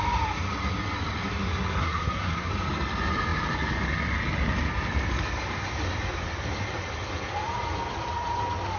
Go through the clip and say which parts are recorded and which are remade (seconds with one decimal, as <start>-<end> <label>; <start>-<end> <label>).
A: 0.0-1.8 recorded; 1.8-2.5 remade; 2.5-8.8 recorded